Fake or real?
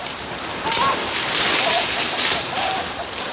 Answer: fake